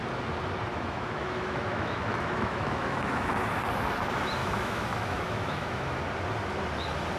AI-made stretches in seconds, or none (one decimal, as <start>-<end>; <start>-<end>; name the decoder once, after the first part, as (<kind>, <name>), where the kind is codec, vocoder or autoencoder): 0.7-3.3 (autoencoder, DAC-VAE); 4.4-6.0